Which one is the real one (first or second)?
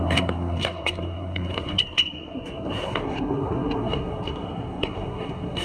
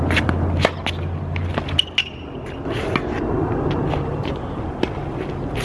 second